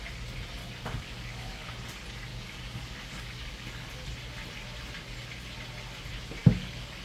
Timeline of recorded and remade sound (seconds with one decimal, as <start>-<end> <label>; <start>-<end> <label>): 0.0-0.6 recorded; 0.6-1.7 remade; 1.7-2.3 recorded; 2.3-3.9 remade; 3.9-6.4 recorded; 6.4-7.0 remade